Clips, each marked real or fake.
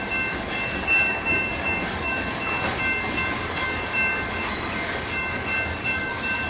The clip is fake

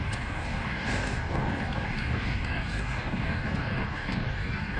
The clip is fake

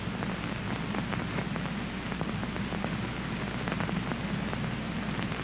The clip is real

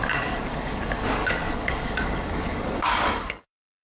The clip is fake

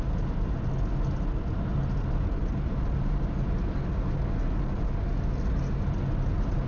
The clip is real